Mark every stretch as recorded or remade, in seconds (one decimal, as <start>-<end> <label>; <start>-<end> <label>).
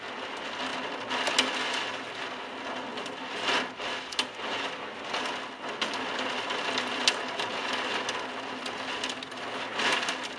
0.0-10.4 recorded